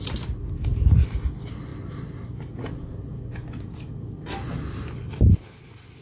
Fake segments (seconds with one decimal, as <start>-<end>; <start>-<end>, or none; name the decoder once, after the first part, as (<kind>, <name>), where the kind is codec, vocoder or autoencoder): none